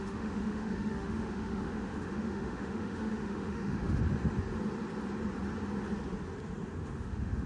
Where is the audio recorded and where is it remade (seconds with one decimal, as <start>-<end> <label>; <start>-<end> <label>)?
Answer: 0.0-4.0 remade; 4.0-6.8 recorded; 6.8-7.5 remade